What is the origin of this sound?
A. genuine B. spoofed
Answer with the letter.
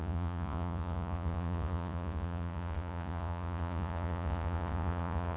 B